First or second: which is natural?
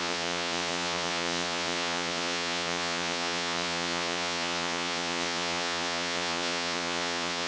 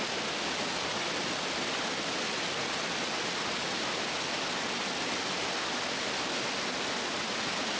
second